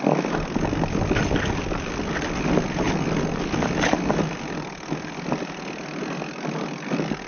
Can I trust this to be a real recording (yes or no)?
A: yes